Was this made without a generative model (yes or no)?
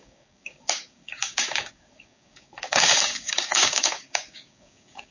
no